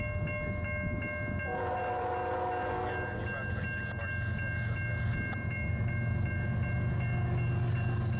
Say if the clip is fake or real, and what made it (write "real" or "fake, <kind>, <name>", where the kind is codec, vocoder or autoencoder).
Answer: real